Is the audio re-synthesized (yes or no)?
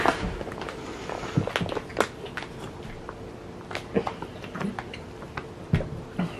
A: no